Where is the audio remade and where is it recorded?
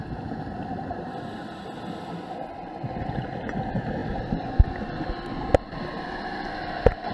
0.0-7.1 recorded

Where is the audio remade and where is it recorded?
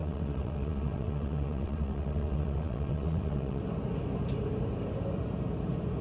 0.0-3.6 remade; 3.6-6.0 recorded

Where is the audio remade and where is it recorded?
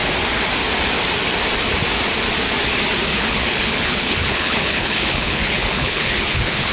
0.0-3.1 recorded; 3.1-6.7 remade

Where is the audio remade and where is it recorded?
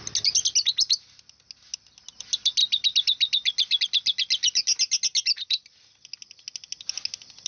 0.0-7.5 recorded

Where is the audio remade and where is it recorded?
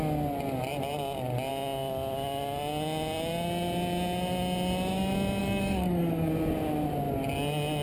0.0-5.4 recorded; 5.4-6.3 remade; 6.3-7.8 recorded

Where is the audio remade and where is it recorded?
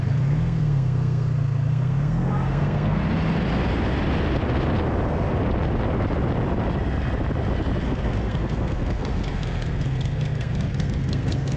0.0-3.0 remade; 3.0-7.8 recorded; 7.8-11.6 remade